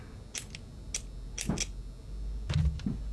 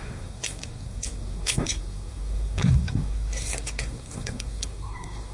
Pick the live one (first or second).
first